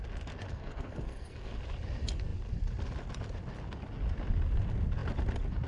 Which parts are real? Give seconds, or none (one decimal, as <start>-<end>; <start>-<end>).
0.0-0.5; 1.5-5.7